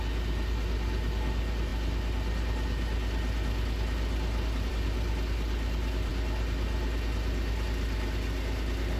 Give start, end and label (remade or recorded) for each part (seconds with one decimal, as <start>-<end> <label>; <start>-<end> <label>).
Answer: 0.0-9.0 recorded